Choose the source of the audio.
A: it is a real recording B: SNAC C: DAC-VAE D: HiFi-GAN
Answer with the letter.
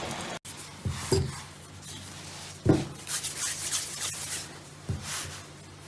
A